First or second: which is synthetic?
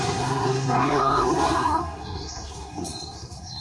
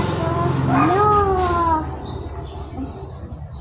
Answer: first